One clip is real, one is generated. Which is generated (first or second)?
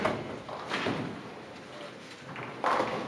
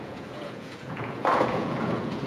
second